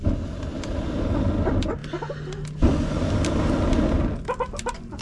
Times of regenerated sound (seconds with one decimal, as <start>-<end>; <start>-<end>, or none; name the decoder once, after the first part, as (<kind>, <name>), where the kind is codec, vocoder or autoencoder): none